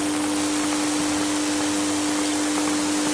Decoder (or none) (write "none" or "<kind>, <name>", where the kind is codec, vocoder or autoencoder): none